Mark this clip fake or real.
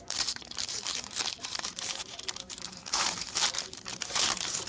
fake